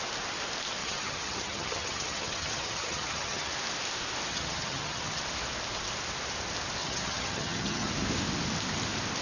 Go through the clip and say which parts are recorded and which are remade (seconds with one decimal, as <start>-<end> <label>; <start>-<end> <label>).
0.0-0.8 recorded; 0.8-3.5 remade; 3.5-4.3 recorded; 4.3-5.2 remade; 5.2-6.8 recorded; 6.8-7.9 remade; 7.9-9.2 recorded